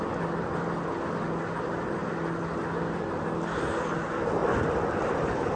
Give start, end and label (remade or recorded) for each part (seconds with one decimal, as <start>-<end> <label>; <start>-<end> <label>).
0.0-4.4 recorded; 4.4-5.6 remade